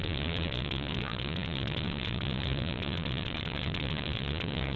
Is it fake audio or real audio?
fake